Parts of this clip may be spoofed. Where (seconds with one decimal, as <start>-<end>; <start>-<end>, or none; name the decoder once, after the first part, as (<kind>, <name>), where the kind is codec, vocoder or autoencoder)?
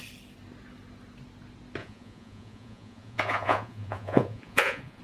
1.8-5.0 (vocoder, Vocos)